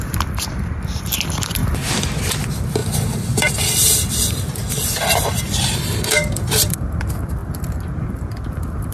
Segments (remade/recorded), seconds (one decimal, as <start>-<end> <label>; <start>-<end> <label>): 0.0-8.9 remade